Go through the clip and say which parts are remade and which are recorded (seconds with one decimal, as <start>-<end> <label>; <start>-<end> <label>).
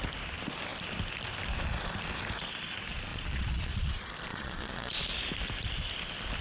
0.0-3.1 recorded; 3.1-3.9 remade; 3.9-4.3 recorded; 4.3-5.0 remade; 5.0-6.4 recorded